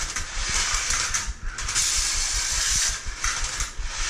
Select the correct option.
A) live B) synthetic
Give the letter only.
A